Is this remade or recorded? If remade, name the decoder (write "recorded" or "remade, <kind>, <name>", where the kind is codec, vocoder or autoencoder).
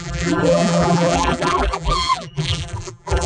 remade, vocoder, BigVGAN v2